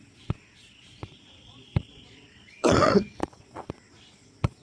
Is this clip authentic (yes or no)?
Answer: no